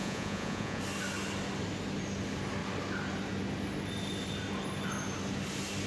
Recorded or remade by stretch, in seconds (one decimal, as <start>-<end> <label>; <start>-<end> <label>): 0.0-0.8 remade; 0.8-5.9 recorded